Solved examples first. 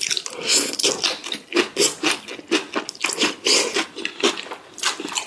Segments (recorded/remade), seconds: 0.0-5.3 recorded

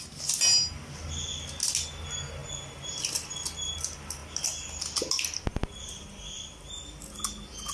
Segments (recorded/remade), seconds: 0.0-7.7 recorded

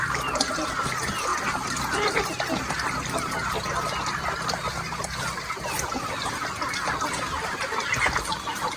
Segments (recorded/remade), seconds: 0.0-8.8 recorded

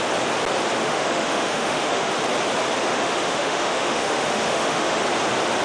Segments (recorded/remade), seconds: 0.0-0.8 recorded; 0.8-2.1 remade; 2.1-2.9 recorded; 2.9-5.0 remade; 5.0-5.6 recorded

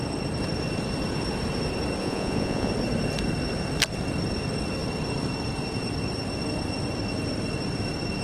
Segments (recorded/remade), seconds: 0.0-2.0 recorded; 2.0-2.7 remade; 2.7-8.2 recorded

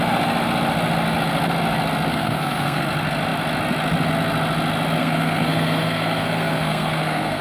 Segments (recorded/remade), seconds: 0.0-2.1 recorded; 2.1-2.8 remade; 2.8-5.0 recorded; 5.0-7.4 remade

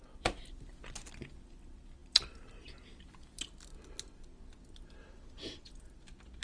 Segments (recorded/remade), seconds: 0.0-5.0 recorded; 5.0-5.7 remade; 5.7-6.4 recorded

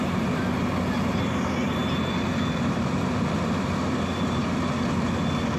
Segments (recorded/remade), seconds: 0.0-5.6 recorded